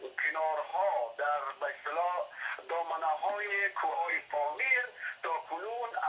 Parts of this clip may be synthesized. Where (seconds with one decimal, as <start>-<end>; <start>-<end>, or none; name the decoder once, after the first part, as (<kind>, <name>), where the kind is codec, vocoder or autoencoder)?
3.9-4.6 (codec, SNAC)